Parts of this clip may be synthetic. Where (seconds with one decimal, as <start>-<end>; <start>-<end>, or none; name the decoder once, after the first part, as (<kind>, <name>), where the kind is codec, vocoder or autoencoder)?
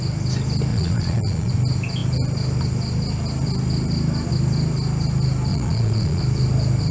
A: 0.7-1.5 (vocoder, Vocos); 5.5-6.2